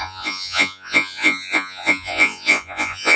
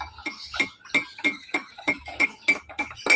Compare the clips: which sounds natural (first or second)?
second